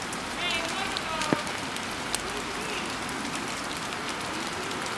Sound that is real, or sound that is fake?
real